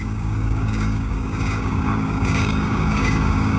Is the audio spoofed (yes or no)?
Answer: yes